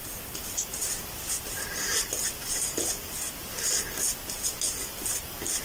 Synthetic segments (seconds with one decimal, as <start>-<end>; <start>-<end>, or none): 0.0-3.4